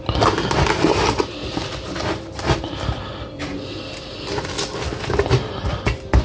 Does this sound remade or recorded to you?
recorded